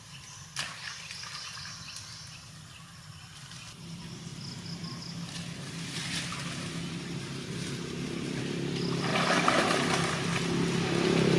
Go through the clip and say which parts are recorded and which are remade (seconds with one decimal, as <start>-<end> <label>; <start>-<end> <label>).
0.0-4.3 remade; 4.3-6.9 recorded; 6.9-9.1 remade; 9.1-11.4 recorded